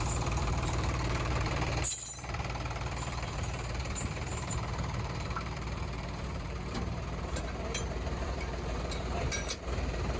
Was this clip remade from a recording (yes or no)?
yes